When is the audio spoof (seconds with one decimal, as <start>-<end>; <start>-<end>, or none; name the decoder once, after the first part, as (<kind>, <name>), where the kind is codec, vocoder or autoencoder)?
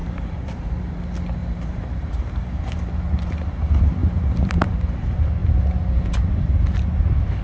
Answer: 0.0-0.9 (vocoder, BigVGAN v2); 1.4-2.6; 4.0-4.9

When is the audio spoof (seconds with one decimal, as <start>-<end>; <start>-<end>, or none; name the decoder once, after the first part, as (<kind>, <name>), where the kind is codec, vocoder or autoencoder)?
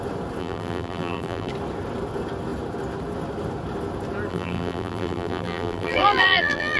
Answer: 0.4-1.5 (vocoder, BigVGAN v2); 4.3-6.8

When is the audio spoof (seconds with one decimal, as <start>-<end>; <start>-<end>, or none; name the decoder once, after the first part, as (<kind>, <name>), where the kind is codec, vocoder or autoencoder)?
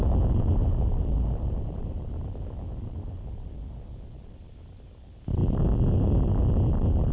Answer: 0.6-4.3 (vocoder, BigVGAN v2); 5.4-6.3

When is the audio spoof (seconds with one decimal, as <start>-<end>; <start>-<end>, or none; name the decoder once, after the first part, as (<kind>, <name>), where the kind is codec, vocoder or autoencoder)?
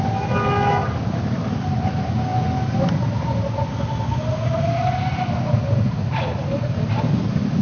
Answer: 0.8-1.9 (vocoder, BigVGAN v2)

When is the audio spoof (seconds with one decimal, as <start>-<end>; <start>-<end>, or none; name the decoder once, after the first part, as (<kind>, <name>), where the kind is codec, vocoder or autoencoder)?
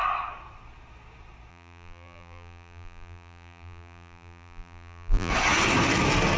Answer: 1.5-5.3 (vocoder, BigVGAN v2)